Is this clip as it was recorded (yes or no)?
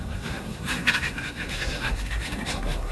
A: no